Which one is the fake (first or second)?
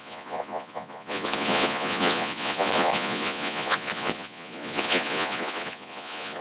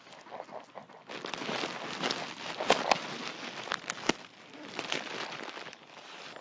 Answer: first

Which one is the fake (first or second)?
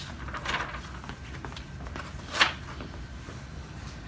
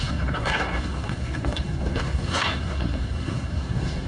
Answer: second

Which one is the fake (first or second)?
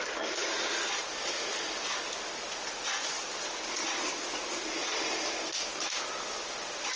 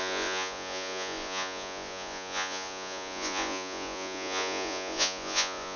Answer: second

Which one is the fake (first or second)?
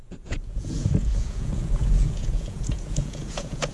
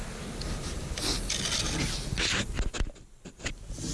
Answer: first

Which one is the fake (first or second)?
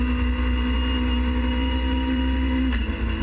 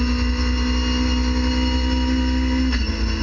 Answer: first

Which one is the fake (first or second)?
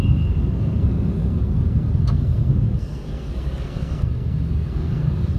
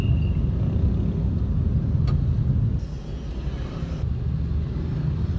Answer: first